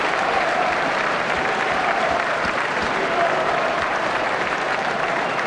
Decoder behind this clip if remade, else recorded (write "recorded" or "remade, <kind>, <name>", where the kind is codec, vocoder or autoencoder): remade, vocoder, BigVGAN v2